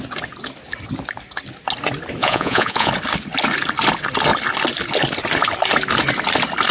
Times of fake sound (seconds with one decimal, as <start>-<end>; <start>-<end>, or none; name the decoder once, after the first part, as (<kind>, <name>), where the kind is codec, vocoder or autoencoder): 2.2-2.9 (vocoder, Vocos)